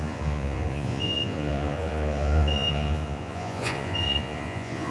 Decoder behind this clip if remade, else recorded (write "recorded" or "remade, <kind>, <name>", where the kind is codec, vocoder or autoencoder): remade, vocoder, Vocos